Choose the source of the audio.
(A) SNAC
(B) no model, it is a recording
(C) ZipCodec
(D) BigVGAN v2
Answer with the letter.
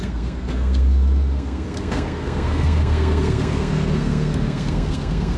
A